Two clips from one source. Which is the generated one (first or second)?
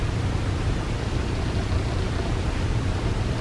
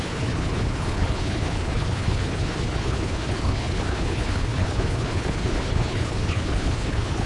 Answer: second